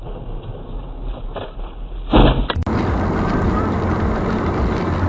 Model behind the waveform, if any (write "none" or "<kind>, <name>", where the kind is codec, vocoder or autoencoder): none